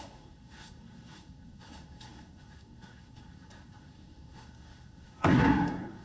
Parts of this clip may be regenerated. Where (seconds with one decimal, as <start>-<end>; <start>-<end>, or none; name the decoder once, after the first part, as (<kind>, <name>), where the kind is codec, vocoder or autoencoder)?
0.0-6.0 (codec, SNAC)